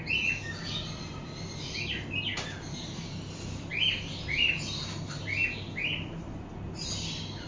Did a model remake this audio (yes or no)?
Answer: no